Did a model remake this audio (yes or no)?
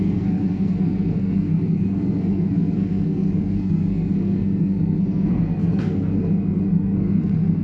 yes